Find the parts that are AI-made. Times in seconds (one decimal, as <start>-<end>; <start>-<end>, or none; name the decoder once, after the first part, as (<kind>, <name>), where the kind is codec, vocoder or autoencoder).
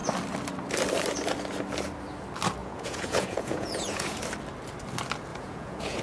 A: 2.6-4.2 (vocoder, Vocos); 5.3-6.0